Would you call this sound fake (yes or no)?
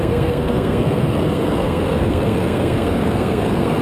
yes